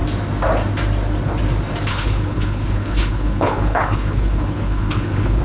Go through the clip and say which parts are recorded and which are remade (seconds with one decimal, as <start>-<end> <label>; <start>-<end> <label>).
0.0-1.9 recorded; 1.9-5.4 remade